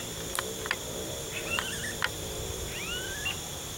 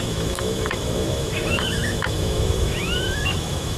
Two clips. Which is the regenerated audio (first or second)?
second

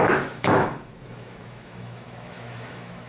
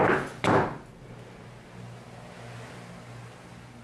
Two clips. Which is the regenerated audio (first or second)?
first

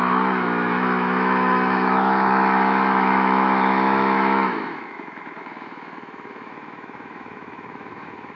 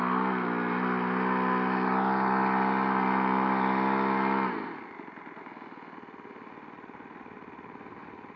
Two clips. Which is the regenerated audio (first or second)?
first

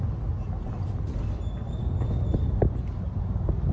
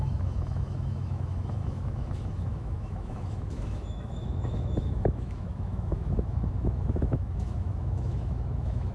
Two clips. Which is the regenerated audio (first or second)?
second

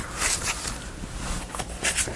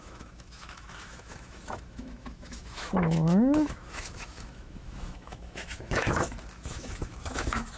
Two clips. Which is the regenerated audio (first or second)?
second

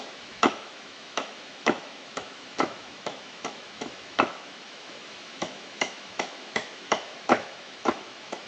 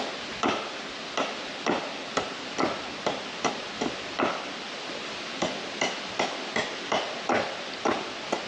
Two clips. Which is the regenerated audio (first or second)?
first